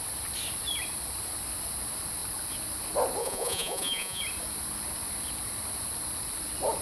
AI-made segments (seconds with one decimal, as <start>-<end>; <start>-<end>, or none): 3.2-4.2